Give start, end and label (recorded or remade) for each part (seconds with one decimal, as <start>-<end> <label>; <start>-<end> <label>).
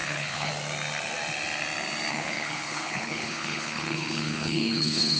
0.0-0.5 remade; 0.5-2.1 recorded; 2.1-5.2 remade